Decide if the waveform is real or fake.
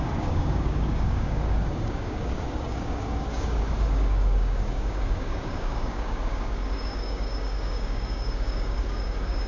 fake